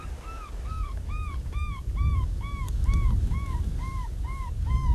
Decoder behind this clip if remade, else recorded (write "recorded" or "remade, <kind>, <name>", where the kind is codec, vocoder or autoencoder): remade, codec, DAC